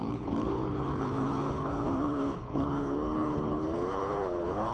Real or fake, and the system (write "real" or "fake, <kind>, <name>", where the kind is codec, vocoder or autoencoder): fake, codec, HILCodec